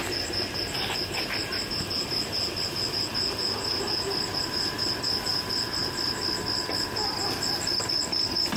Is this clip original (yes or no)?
yes